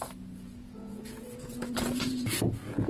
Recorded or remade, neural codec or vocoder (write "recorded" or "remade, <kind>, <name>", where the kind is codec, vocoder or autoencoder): remade, vocoder, Vocos